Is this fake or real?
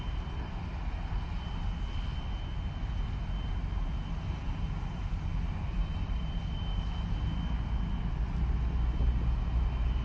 real